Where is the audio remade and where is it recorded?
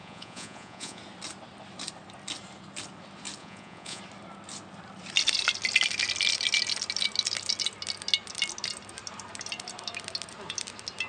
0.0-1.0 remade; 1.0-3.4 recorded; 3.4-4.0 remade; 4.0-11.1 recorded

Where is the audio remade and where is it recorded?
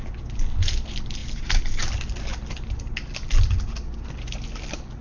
0.0-5.0 recorded